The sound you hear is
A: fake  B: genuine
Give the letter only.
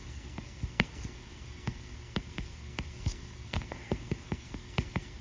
A